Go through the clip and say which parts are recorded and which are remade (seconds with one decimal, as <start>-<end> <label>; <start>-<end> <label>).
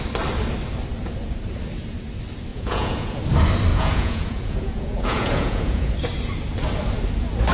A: 0.0-2.5 recorded; 2.5-3.2 remade; 3.2-3.7 recorded; 3.7-5.9 remade; 5.9-7.5 recorded